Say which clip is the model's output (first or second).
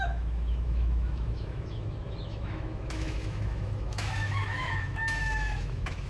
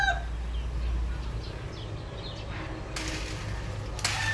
first